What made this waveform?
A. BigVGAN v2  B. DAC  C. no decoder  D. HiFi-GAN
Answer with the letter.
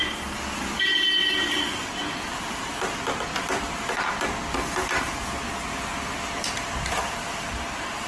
C